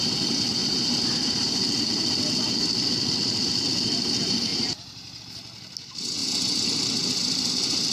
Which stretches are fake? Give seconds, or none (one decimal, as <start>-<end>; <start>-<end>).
0.6-1.6; 4.5-5.2